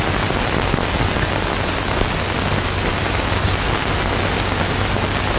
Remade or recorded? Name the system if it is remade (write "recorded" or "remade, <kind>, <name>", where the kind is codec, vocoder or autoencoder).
recorded